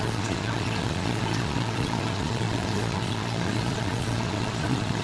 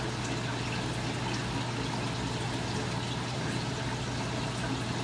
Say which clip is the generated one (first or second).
first